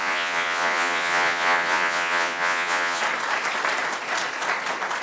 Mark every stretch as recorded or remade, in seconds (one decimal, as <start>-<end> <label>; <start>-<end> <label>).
0.0-3.0 remade; 3.0-5.0 recorded